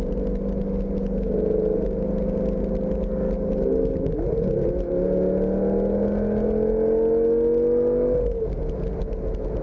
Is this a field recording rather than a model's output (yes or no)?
yes